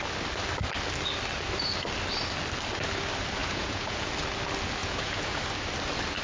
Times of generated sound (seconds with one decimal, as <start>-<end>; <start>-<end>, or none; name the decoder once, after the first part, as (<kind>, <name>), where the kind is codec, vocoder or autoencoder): 3.4-4.1 (vocoder, Vocos); 4.8-5.4

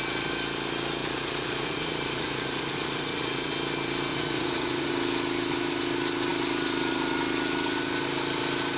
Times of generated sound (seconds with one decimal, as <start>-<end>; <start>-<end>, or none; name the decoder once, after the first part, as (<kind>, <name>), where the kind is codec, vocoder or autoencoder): 1.0-3.5 (vocoder, Vocos); 4.1-4.9

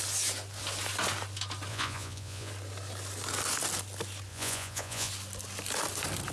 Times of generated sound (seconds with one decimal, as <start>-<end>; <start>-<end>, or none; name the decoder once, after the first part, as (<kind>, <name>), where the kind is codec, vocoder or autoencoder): 1.7-2.5 (vocoder, Vocos); 4.3-5.1

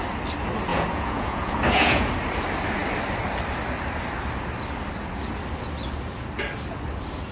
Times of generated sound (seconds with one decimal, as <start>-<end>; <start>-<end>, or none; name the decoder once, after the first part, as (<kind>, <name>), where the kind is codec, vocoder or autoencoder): 0.7-2.1 (vocoder, Vocos)

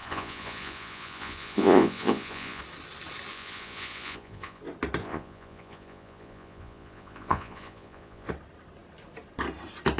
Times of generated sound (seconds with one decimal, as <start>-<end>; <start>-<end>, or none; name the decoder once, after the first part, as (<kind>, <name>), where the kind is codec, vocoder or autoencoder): 0.0-2.6 (vocoder, Vocos); 3.3-4.6; 5.0-8.3

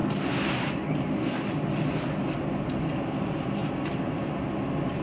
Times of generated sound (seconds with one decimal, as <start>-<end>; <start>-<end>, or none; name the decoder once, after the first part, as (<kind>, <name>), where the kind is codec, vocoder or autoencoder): none

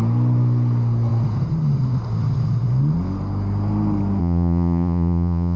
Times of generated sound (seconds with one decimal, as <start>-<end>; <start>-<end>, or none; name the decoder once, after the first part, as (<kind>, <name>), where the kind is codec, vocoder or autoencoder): 4.2-5.6 (vocoder, Vocos)